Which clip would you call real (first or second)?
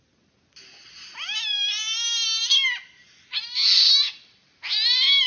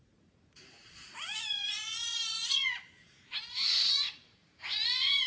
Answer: first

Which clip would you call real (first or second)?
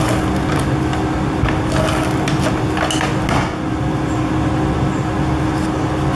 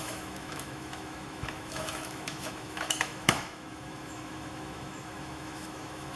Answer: first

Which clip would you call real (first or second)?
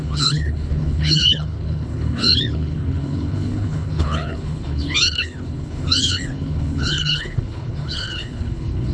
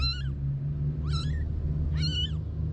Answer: second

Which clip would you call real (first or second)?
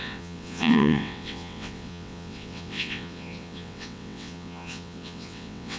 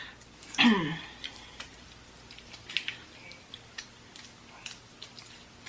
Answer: second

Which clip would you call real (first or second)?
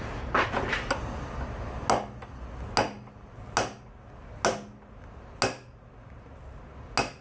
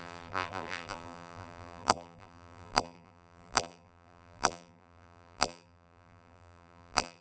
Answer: first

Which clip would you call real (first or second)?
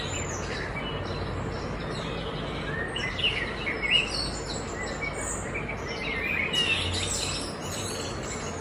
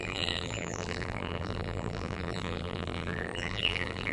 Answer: first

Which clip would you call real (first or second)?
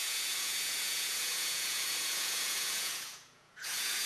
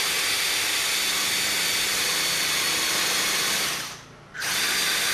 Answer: second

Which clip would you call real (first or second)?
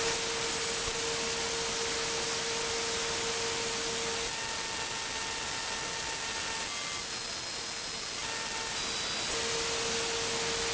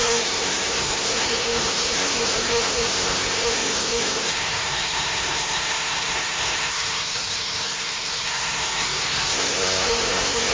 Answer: first